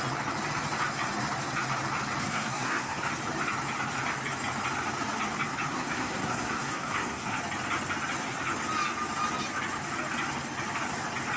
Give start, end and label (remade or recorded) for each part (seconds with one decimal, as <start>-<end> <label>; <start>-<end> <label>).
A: 0.0-2.2 recorded; 2.2-3.0 remade; 3.0-5.7 recorded; 5.7-7.4 remade; 7.4-11.4 recorded